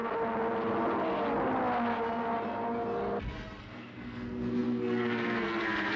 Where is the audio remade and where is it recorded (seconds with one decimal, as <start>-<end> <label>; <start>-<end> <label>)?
0.0-3.6 recorded; 3.6-6.0 remade